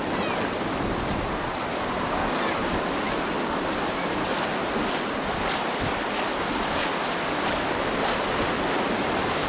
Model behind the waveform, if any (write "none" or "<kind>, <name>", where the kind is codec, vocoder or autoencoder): none